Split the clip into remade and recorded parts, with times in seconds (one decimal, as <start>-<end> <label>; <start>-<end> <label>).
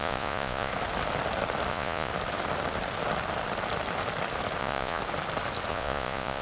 0.0-0.7 remade; 0.7-1.7 recorded; 1.7-2.1 remade; 2.1-4.6 recorded; 4.6-5.0 remade; 5.0-5.7 recorded; 5.7-6.4 remade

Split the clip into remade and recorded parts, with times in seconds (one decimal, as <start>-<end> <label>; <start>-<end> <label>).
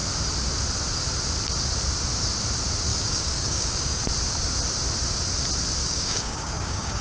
0.0-2.9 recorded; 2.9-4.0 remade; 4.0-5.8 recorded; 5.8-7.0 remade